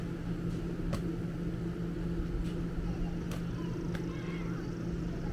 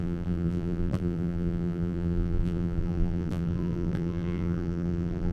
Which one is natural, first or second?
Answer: first